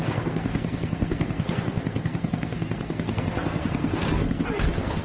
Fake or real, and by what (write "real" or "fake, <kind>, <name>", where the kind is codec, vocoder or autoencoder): fake, codec, SNAC